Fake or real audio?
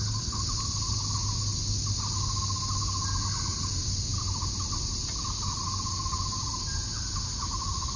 real